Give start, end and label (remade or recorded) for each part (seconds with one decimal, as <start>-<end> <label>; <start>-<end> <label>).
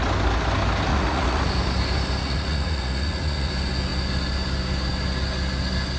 0.0-0.9 recorded; 0.9-1.4 remade; 1.4-2.2 recorded; 2.2-3.5 remade; 3.5-6.0 recorded